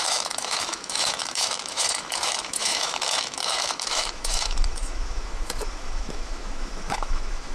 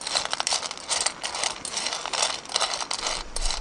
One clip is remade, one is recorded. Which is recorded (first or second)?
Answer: second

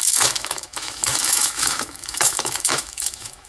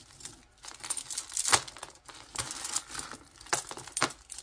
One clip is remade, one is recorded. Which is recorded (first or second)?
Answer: second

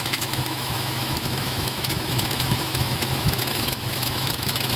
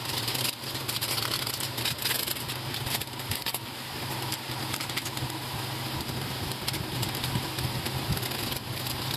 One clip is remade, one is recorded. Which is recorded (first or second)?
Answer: second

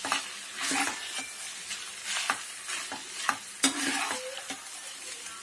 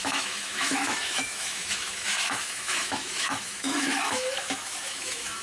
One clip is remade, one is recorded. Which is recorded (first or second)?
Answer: first